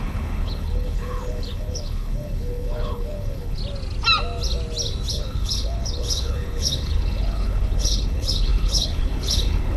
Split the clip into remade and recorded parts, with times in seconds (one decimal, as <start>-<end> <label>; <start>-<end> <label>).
0.0-3.6 remade; 3.6-5.1 recorded; 5.1-9.8 remade